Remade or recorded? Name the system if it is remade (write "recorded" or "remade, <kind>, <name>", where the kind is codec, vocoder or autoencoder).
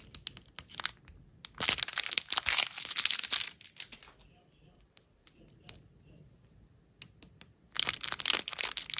recorded